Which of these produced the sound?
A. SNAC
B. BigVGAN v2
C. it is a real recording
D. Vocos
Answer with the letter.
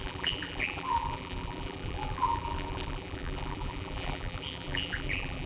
B